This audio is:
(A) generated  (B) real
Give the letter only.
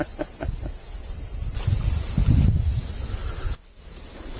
B